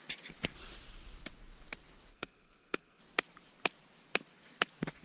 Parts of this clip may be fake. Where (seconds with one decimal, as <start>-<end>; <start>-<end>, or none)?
2.1-3.0

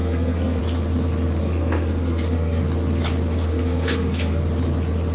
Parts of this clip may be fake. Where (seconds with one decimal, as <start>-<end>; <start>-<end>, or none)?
0.0-0.6; 1.4-2.6; 3.5-4.4

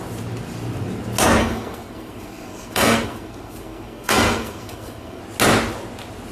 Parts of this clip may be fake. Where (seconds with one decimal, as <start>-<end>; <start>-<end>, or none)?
1.4-5.2

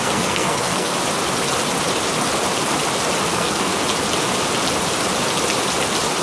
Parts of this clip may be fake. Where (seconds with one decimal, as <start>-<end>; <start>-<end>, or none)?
0.0-0.9; 3.3-3.7